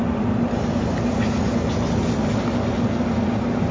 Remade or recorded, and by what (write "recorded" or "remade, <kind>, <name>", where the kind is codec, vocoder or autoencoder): recorded